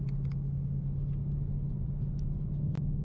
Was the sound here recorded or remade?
recorded